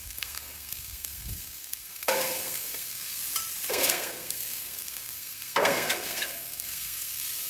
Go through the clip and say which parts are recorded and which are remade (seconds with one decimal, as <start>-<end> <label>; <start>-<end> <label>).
0.0-3.2 remade; 3.2-3.7 recorded; 3.7-7.5 remade